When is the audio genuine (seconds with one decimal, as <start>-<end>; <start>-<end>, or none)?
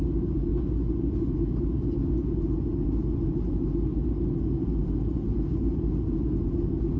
0.0-7.0